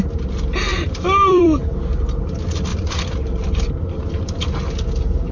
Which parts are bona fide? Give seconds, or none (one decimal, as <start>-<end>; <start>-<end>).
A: 0.0-0.7; 1.8-2.7; 3.7-5.3

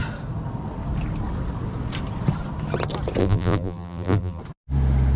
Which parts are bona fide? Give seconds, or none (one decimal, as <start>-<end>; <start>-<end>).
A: 0.0-3.2; 4.4-5.2

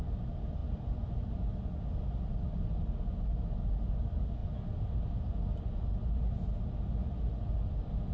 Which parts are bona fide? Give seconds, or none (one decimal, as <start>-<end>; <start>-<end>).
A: 0.0-8.1

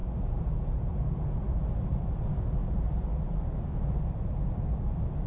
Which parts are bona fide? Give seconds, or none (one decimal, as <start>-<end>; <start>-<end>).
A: 2.1-2.6; 4.1-5.3